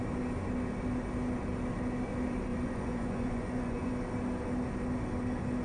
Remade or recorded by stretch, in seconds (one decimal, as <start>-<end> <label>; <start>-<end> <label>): 0.0-2.5 recorded; 2.5-3.9 remade; 3.9-5.6 recorded